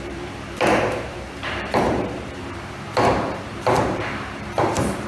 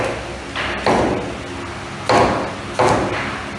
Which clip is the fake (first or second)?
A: first